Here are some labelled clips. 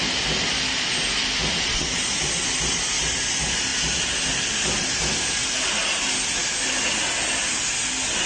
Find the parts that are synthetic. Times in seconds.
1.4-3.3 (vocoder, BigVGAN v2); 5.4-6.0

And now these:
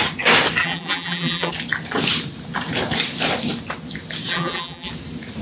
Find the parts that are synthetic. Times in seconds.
0.6-1.5 (vocoder, BigVGAN v2); 4.3-4.9

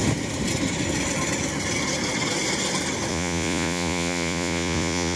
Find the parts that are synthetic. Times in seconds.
3.1-5.2 (vocoder, Vocos)